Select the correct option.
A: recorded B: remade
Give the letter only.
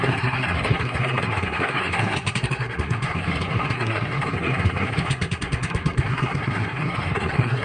B